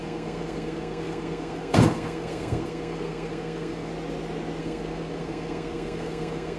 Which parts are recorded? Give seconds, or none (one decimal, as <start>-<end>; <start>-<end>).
3.9-4.6